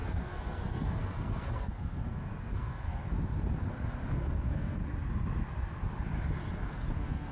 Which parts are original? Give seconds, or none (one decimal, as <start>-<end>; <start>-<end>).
3.0-4.1; 4.8-6.7